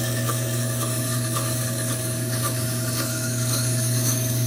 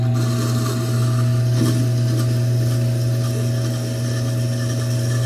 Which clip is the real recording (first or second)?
second